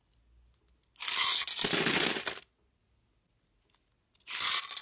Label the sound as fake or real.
real